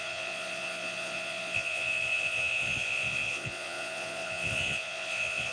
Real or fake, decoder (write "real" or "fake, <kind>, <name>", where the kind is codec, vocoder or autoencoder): fake, vocoder, Vocos